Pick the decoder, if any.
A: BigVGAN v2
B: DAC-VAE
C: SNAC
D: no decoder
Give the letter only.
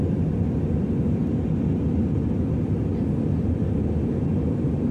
D